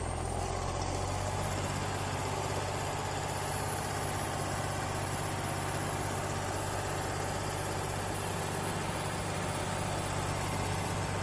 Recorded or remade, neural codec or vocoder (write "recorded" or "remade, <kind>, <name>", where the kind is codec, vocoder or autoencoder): recorded